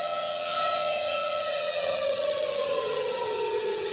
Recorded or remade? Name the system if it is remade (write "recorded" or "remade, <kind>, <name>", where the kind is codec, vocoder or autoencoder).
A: remade, vocoder, HiFi-GAN